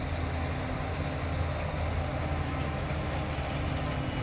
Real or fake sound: real